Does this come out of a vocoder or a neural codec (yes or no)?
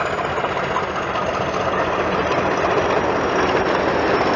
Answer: no